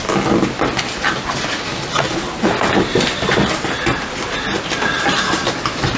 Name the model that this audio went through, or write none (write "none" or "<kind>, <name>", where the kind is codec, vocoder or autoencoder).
none